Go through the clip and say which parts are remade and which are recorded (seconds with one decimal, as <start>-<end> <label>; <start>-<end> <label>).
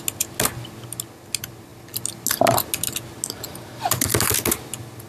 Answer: 0.0-5.1 recorded